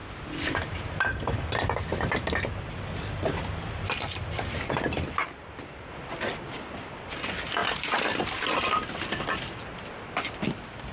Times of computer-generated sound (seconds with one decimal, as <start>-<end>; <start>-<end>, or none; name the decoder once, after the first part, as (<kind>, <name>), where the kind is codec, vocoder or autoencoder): none

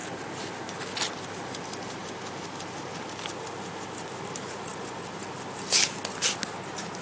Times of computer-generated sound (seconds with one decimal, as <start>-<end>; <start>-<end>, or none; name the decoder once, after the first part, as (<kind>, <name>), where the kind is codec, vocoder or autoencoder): none

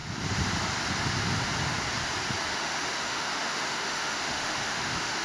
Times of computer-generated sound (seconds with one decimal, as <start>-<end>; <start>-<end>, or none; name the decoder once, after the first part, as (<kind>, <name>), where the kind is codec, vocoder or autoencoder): 2.5-5.2 (autoencoder, DAC-VAE)

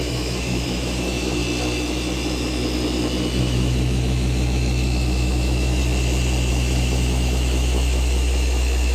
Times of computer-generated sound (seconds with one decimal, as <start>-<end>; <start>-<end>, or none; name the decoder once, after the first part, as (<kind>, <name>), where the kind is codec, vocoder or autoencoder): 0.0-1.4 (autoencoder, DAC-VAE); 3.4-5.8; 6.5-8.9

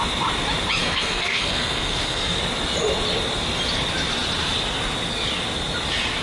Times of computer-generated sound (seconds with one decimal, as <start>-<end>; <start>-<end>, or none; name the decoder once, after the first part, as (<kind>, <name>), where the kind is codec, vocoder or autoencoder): 0.8-2.4 (codec, SNAC)

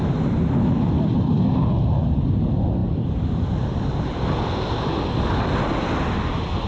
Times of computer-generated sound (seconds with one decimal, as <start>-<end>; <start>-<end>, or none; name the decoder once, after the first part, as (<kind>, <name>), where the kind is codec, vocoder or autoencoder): none

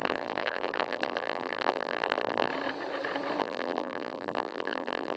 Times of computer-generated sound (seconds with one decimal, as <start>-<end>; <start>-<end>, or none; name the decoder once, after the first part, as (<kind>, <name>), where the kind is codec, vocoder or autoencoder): 0.0-2.5 (vocoder, BigVGAN v2); 3.4-5.2

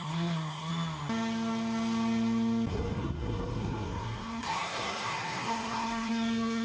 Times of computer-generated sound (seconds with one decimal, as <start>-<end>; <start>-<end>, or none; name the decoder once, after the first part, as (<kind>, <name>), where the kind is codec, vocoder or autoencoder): 0.0-0.7 (codec, SNAC); 2.7-6.6